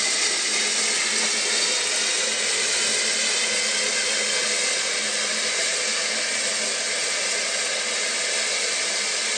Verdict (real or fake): real